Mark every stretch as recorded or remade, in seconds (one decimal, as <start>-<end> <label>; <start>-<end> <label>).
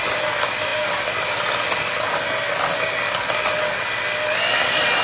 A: 0.0-5.0 recorded